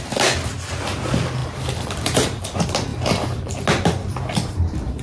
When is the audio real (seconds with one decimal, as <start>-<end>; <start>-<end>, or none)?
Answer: 0.0-1.4; 2.4-2.9; 3.5-4.0